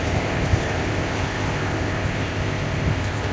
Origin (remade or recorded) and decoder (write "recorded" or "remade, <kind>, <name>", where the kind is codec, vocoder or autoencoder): remade, codec, ZipCodec